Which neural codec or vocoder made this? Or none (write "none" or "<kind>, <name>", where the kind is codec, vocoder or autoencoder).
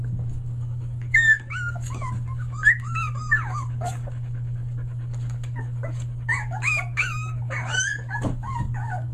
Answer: codec, DAC